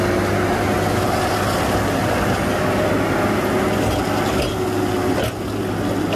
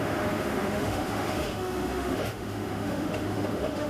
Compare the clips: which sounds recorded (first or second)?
first